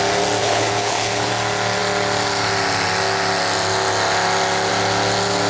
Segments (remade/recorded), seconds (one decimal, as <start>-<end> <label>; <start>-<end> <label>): 0.0-0.4 recorded; 0.4-1.3 remade; 1.3-5.5 recorded